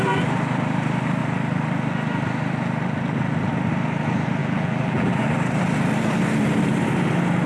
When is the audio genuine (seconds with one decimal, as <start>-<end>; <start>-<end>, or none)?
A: 0.0-4.4; 5.2-7.5